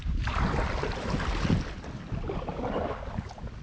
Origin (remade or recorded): recorded